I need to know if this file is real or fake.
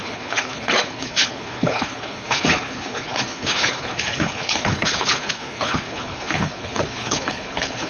fake